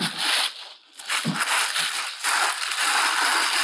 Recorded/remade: recorded